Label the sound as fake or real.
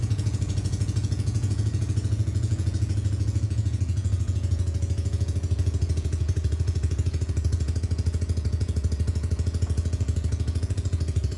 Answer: fake